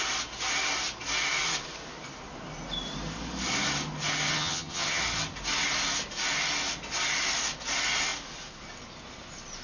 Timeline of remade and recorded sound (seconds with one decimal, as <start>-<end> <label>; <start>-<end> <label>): 0.0-4.3 recorded; 4.3-5.0 remade; 5.0-9.6 recorded